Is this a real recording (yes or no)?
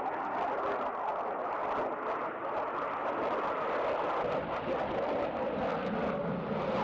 yes